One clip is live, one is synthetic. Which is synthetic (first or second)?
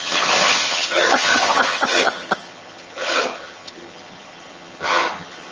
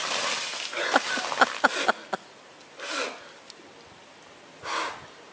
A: first